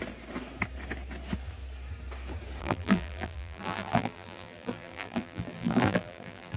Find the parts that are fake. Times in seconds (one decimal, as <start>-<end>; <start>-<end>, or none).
2.6-6.6

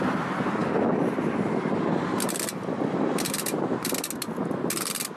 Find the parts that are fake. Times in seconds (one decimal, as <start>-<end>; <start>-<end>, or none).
none

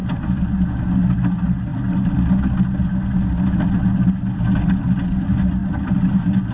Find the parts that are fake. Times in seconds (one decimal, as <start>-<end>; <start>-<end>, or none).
none

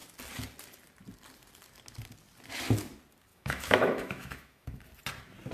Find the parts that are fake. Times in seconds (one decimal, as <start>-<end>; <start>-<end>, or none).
3.3-4.8

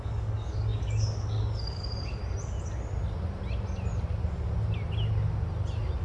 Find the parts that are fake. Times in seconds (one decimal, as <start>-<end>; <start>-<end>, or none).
0.0-2.2

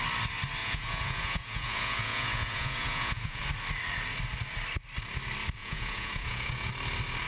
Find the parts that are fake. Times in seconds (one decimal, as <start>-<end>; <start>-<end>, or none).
0.6-3.4; 5.6-6.7